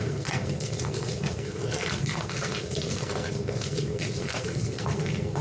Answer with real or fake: fake